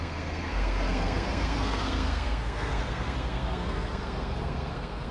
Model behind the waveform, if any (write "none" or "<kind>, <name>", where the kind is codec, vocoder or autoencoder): codec, SNAC